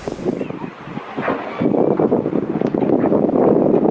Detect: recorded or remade recorded